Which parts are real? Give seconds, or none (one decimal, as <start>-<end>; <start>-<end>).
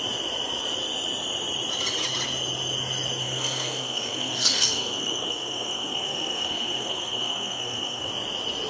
0.0-3.2; 8.1-8.7